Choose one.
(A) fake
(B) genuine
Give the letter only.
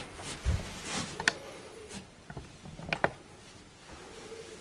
B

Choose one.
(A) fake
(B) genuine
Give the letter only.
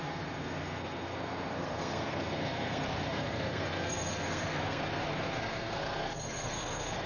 A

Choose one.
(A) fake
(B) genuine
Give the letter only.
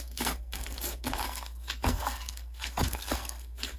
A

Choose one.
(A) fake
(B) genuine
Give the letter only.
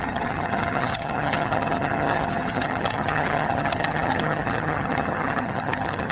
A